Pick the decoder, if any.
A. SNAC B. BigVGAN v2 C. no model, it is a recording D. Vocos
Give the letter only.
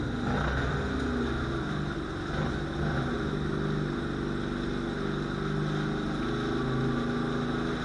C